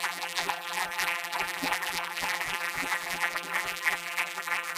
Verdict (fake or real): fake